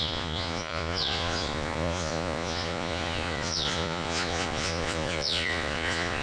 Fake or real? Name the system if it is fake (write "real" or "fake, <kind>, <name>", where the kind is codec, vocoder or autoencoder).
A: fake, vocoder, Vocos